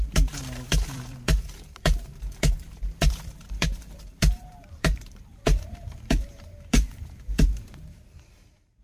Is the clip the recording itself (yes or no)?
no